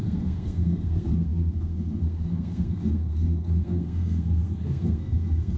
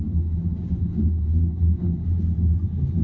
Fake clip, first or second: first